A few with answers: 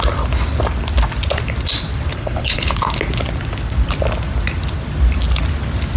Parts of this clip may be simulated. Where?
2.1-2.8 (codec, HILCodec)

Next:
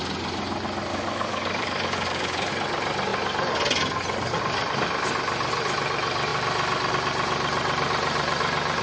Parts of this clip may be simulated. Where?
0.9-2.5 (codec, DAC)

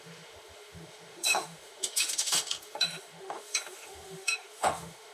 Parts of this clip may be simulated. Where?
0.0-5.1 (autoencoder, DAC-VAE)

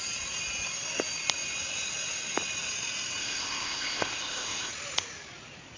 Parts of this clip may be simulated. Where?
3.2-4.7 (codec, ZipCodec)

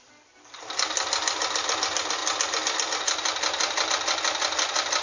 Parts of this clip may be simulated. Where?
none

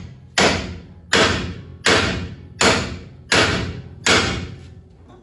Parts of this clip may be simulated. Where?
none

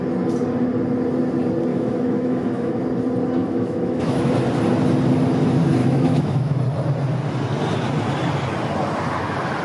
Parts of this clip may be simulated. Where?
1.7-2.8 (autoencoder, DAC-VAE); 3.4-4.3; 5.8-6.6